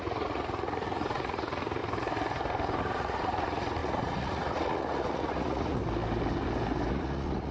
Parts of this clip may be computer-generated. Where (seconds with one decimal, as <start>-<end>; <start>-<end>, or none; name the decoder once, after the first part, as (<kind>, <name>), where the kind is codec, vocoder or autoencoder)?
0.0-1.8 (vocoder, Vocos); 2.8-5.8; 6.9-7.5